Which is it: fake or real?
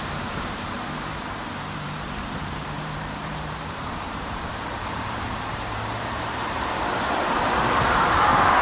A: fake